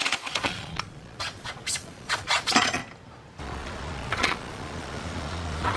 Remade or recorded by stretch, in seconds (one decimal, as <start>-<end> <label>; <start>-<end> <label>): 0.0-2.8 remade; 2.8-3.4 recorded; 3.4-5.8 remade